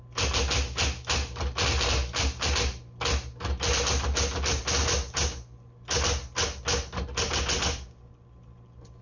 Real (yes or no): yes